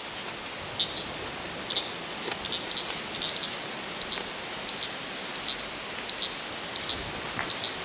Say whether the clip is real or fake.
real